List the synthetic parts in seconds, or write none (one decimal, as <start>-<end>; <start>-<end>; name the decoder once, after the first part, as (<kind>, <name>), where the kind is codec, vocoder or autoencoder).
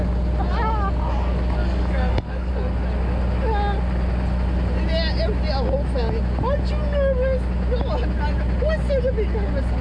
1.6-2.5 (codec, DAC)